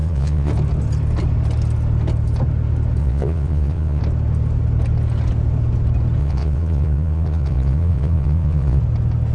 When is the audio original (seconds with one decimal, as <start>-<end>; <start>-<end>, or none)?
0.5-3.0; 4.0-6.2; 8.8-9.3